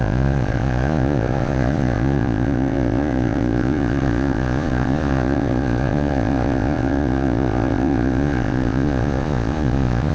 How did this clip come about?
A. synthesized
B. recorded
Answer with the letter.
A